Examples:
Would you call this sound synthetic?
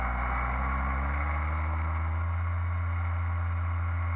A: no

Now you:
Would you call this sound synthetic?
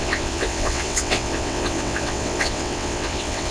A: yes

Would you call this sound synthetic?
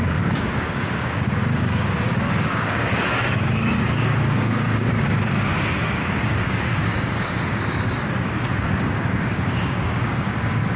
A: yes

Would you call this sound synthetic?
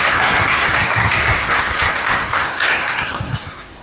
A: yes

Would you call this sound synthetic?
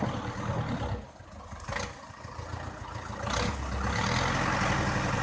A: no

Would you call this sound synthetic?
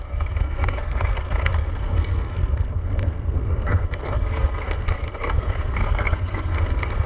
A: yes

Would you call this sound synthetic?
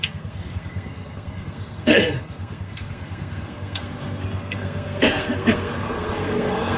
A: yes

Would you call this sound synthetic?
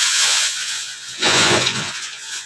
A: yes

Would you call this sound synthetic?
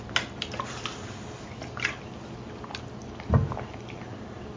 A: no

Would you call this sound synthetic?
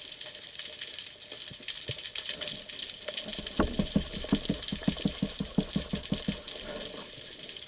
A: no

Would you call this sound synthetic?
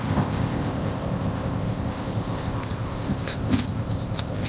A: yes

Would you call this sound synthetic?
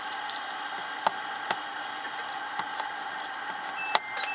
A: no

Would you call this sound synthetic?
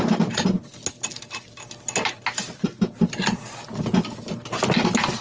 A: no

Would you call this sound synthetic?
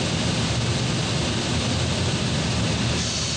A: no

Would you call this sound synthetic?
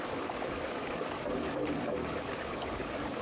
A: yes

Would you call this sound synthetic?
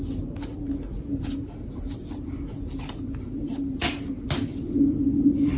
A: no